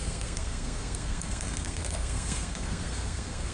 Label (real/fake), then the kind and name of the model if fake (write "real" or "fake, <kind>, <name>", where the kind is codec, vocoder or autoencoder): fake, codec, SNAC